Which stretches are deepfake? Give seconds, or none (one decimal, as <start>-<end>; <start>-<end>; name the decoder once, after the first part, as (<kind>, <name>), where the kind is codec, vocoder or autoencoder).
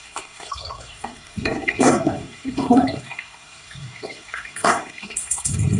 0.0-5.8 (codec, SNAC)